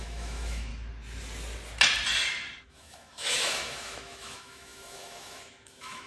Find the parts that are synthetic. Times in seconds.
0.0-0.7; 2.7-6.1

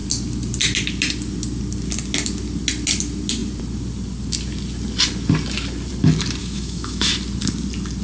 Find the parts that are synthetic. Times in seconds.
6.4-7.1

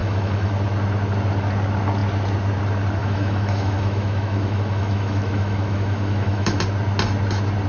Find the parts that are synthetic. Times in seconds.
0.0-0.5; 3.0-6.6

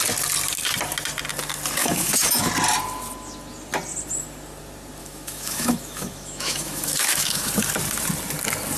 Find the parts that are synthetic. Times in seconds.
1.8-2.5; 5.0-7.5

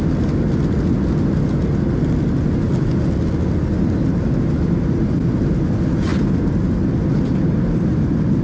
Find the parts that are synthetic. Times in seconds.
none

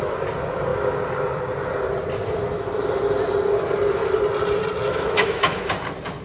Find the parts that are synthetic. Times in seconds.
4.9-5.6

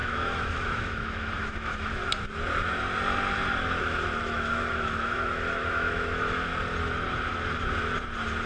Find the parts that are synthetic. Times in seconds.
0.0-2.0; 3.8-6.5